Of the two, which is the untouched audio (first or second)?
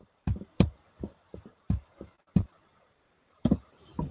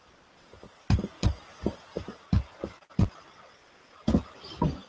second